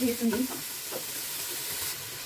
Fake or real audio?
real